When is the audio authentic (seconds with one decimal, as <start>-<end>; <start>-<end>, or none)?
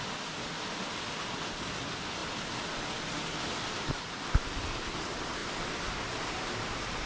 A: 0.0-7.1